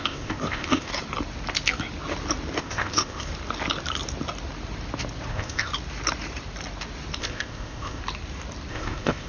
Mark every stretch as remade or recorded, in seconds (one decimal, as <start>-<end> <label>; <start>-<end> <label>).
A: 0.0-0.9 remade; 0.9-2.6 recorded; 2.6-3.3 remade; 3.3-5.3 recorded; 5.3-5.7 remade; 5.7-7.2 recorded; 7.2-8.0 remade; 8.0-8.7 recorded; 8.7-9.3 remade